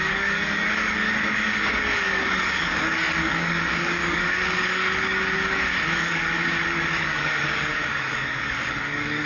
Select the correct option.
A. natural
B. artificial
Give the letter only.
B